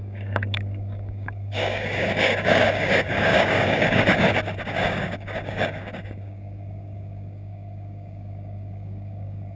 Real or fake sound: fake